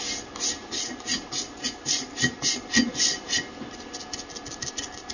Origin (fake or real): real